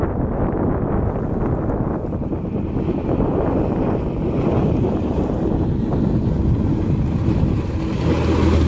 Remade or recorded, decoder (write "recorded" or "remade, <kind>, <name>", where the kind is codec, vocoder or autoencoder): recorded